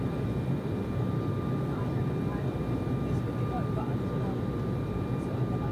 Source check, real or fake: real